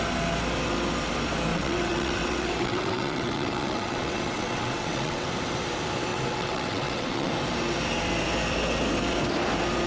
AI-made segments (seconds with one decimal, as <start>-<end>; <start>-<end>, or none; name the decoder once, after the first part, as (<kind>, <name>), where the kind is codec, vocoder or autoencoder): 1.5-5.3 (vocoder, WaveNeXt); 6.1-7.3